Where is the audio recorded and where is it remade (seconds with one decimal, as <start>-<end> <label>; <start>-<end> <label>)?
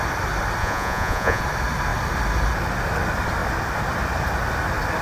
0.0-0.6 recorded; 0.6-1.4 remade; 1.4-5.0 recorded